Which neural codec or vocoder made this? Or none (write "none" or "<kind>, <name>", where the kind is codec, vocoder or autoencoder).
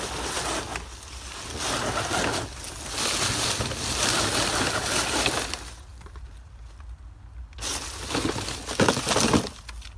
none